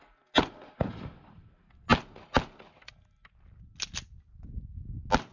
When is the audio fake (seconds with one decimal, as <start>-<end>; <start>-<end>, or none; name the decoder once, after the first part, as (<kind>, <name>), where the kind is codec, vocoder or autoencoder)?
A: none